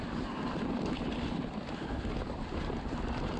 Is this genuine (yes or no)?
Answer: yes